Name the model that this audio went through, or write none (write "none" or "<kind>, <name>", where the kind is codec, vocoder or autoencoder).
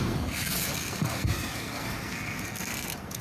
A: codec, SNAC